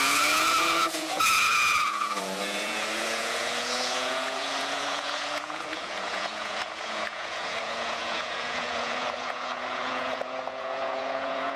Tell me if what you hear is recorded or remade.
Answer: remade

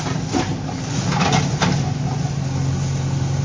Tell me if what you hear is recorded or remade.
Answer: recorded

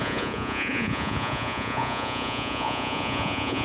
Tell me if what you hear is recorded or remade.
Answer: remade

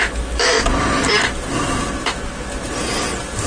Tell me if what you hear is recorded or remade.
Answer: recorded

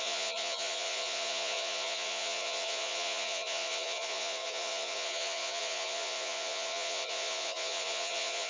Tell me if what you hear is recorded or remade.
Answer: remade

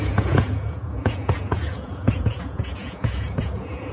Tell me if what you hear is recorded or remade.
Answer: remade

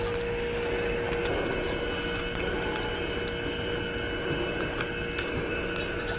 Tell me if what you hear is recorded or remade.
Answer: recorded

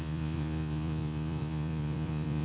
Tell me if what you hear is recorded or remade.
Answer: remade